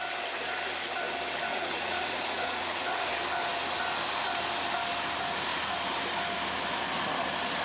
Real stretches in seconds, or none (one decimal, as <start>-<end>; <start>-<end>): 0.0-1.5; 3.1-7.6